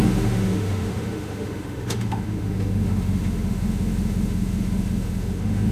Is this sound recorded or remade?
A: remade